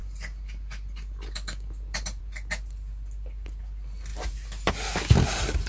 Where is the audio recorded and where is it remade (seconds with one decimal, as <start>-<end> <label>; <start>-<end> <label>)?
0.0-5.7 recorded